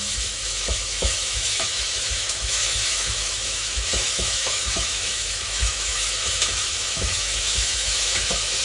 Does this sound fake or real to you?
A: fake